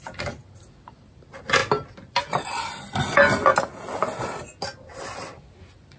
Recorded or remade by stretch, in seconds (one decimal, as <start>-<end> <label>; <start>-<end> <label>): 0.0-6.0 recorded